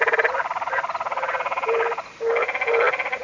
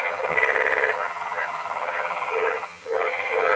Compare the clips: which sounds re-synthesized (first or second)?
second